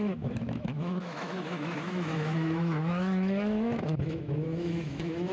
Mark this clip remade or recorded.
remade